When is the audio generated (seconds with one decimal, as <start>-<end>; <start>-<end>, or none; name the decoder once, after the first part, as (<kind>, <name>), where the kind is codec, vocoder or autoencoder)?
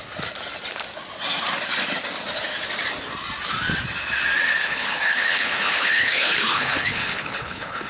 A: 4.6-7.9 (codec, HILCodec)